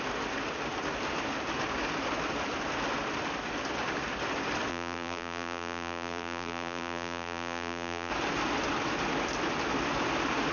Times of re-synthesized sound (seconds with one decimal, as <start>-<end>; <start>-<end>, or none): 4.7-8.1